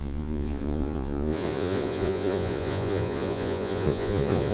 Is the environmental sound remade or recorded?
remade